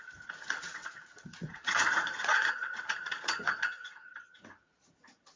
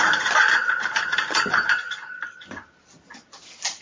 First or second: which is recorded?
second